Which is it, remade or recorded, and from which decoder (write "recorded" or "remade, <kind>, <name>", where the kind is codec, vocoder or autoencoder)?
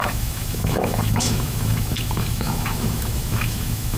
remade, autoencoder, DAC-VAE